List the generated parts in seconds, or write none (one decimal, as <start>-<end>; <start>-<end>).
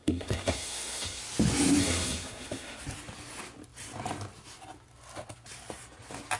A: 0.0-1.2; 1.8-2.8